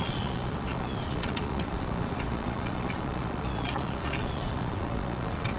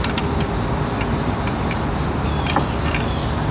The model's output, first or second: first